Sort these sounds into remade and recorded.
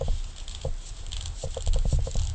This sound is recorded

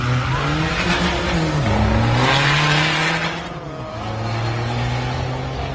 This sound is recorded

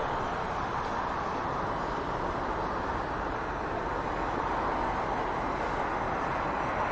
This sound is recorded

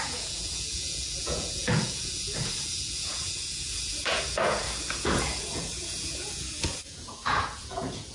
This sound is remade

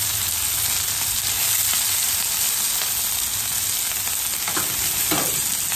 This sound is recorded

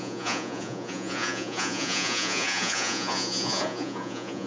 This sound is remade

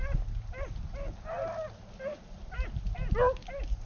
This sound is recorded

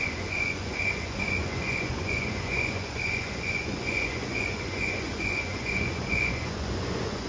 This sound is remade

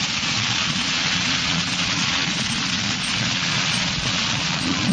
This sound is remade